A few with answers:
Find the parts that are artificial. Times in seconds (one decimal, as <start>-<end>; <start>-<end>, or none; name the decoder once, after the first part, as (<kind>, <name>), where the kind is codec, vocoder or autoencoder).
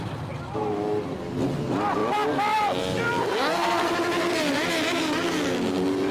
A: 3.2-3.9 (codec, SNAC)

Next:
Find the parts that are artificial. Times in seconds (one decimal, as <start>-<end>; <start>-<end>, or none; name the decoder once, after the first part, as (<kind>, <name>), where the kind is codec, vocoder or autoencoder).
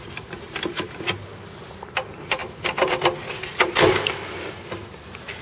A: none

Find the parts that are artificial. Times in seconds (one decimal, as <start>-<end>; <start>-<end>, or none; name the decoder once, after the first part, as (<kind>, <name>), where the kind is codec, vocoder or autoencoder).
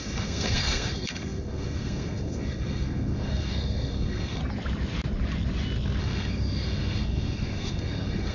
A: 0.0-4.4 (codec, SNAC); 6.0-8.3